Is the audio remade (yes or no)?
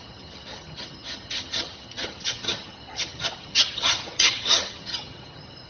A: yes